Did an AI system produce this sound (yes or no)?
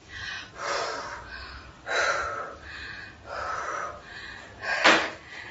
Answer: no